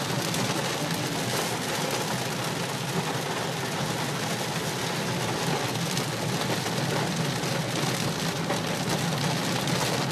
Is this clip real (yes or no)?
yes